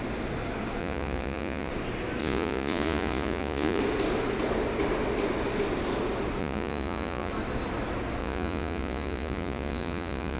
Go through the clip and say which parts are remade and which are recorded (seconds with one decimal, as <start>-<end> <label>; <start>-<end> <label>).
0.0-0.8 recorded; 0.8-1.7 remade; 1.7-2.2 recorded; 2.2-3.8 remade; 3.8-6.4 recorded; 6.4-7.3 remade; 7.3-8.2 recorded; 8.2-10.4 remade